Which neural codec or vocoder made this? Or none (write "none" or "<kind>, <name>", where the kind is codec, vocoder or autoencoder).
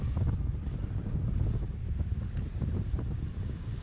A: none